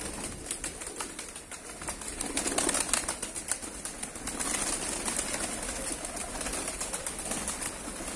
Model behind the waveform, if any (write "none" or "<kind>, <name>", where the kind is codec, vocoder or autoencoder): none